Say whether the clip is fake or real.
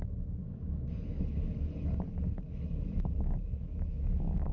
fake